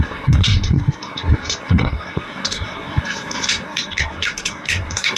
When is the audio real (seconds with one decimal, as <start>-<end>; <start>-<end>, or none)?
none